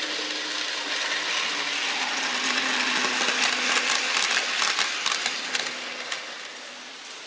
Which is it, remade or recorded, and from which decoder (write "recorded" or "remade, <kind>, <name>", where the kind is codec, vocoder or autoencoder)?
recorded